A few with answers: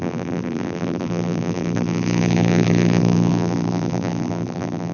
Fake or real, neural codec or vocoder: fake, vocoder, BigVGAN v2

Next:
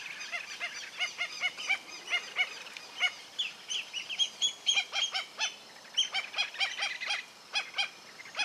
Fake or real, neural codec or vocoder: fake, vocoder, BigVGAN v2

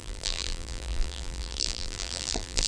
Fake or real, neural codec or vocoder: fake, vocoder, BigVGAN v2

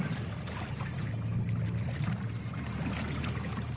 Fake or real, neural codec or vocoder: real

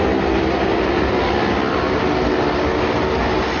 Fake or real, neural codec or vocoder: real